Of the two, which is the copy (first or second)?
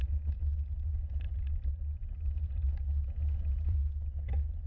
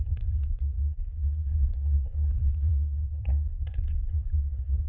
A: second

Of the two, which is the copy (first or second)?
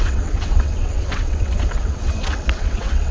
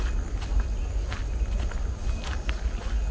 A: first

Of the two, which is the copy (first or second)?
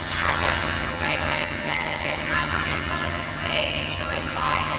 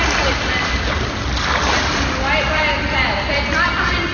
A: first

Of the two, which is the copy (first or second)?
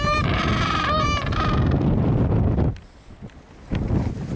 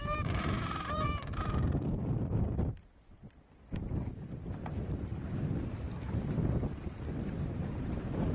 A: second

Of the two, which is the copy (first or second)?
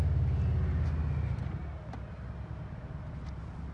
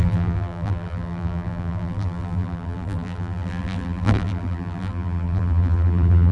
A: second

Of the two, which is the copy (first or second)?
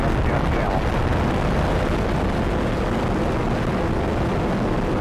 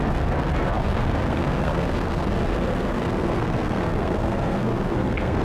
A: second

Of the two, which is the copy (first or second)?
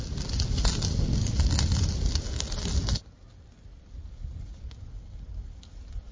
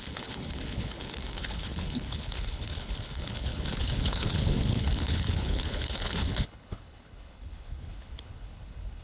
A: second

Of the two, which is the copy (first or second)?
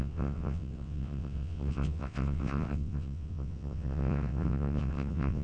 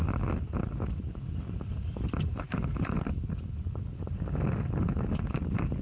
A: first